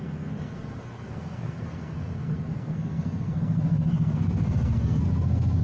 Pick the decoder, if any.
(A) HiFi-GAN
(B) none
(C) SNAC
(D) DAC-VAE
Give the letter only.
C